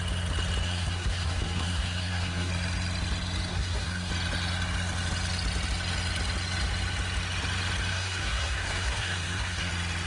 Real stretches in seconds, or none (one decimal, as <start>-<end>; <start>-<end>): 0.0-0.6; 2.5-3.5; 4.1-7.9; 9.7-10.1